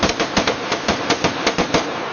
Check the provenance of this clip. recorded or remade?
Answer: remade